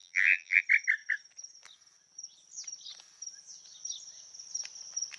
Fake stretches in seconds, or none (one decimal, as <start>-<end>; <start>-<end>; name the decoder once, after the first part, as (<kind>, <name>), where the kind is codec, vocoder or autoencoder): 0.0-0.6 (vocoder, BigVGAN v2)